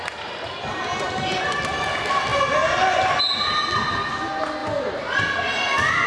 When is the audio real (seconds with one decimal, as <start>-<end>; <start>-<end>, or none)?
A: 0.0-4.6; 5.2-6.1

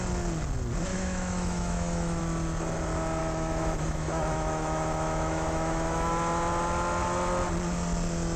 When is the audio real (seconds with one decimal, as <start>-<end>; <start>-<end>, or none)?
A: 0.0-0.9; 2.2-3.2; 6.1-8.4